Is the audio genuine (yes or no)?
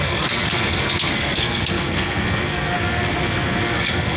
no